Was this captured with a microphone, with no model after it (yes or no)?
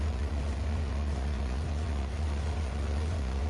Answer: no